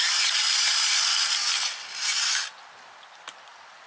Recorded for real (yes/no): yes